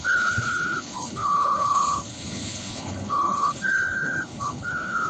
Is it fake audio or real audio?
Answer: fake